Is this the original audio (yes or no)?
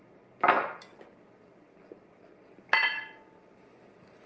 yes